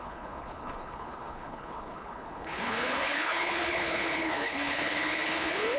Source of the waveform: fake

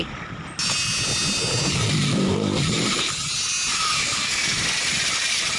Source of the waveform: real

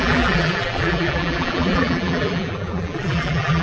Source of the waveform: fake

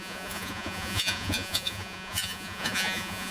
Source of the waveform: fake